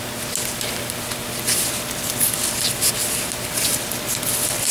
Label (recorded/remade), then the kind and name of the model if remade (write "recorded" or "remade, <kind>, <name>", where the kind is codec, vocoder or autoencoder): recorded